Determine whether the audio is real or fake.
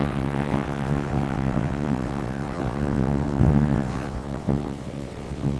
fake